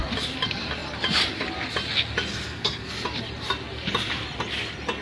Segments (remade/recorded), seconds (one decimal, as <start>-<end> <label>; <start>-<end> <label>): 0.0-2.3 recorded; 2.3-2.9 remade; 2.9-5.0 recorded